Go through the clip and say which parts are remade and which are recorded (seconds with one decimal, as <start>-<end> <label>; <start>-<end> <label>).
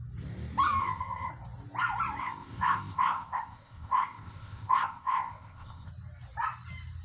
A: 0.0-0.8 recorded; 0.8-1.3 remade; 1.3-2.2 recorded; 2.2-5.9 remade; 5.9-7.0 recorded